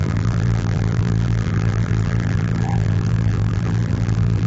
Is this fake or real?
fake